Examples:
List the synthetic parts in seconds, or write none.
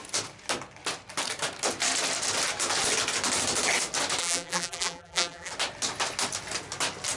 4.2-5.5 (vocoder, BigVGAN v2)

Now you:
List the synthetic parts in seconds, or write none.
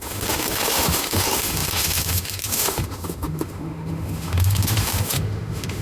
0.0-5.8 (autoencoder, DAC-VAE)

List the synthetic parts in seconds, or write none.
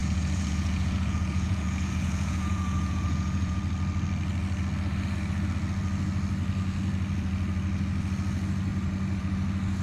0.0-3.6 (vocoder, Vocos)